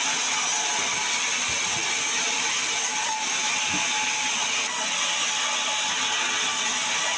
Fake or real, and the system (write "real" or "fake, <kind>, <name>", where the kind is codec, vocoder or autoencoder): real